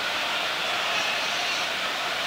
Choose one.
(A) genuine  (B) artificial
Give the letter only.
B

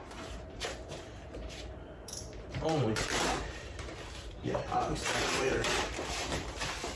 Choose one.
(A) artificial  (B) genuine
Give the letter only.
A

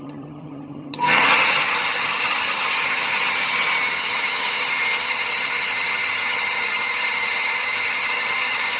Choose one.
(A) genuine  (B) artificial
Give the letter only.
B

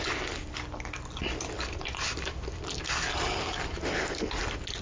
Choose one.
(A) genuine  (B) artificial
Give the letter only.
A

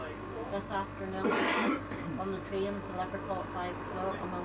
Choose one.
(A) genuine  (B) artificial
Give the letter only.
A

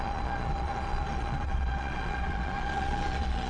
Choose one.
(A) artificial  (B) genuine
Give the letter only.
A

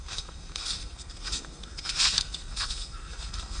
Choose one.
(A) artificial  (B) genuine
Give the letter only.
A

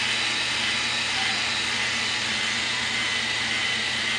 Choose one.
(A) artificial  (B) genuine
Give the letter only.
B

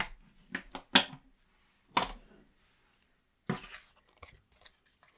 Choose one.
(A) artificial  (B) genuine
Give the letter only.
B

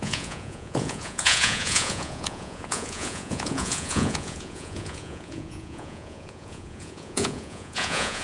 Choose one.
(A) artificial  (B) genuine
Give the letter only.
A